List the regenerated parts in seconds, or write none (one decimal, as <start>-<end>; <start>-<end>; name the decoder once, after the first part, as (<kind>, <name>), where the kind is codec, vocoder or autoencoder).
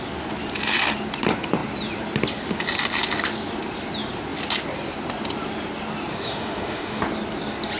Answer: 6.1-7.0 (autoencoder, DAC-VAE)